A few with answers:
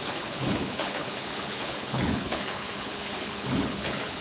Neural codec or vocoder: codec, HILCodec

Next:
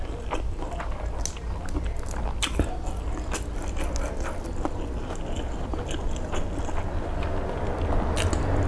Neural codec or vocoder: none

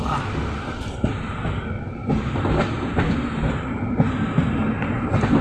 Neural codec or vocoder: none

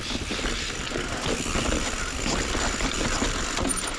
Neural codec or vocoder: none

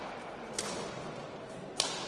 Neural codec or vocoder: none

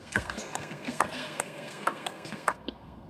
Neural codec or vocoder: codec, SNAC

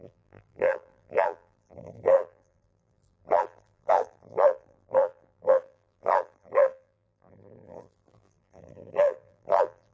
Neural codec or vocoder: vocoder, BigVGAN v2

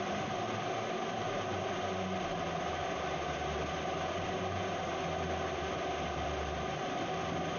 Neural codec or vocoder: none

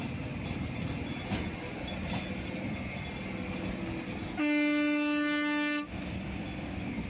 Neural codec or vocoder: none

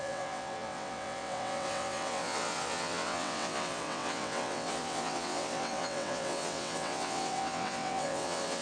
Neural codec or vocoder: vocoder, WaveNeXt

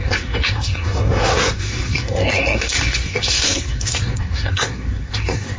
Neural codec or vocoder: codec, SNAC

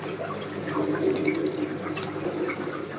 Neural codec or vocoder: none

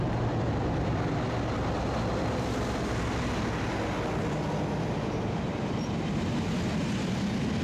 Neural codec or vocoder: none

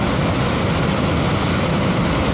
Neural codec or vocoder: none